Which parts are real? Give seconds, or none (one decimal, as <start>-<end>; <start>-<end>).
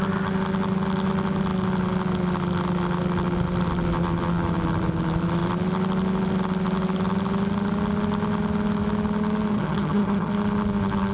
0.0-9.5; 10.3-11.1